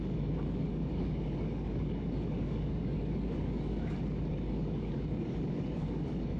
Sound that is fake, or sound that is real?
fake